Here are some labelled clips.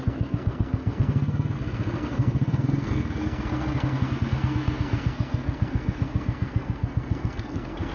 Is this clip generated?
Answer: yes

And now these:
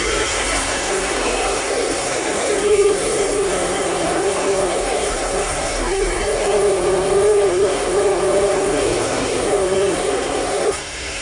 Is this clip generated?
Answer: yes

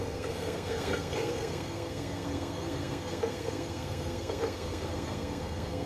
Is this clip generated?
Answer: yes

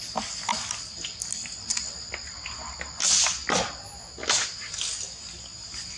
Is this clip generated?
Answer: no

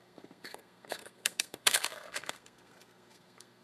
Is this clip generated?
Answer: yes